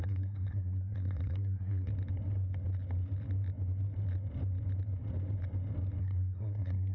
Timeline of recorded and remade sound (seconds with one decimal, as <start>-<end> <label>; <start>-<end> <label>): 0.0-1.9 remade; 1.9-6.0 recorded; 6.0-6.9 remade